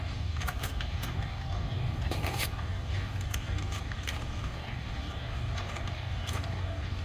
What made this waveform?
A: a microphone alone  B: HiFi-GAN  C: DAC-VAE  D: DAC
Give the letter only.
D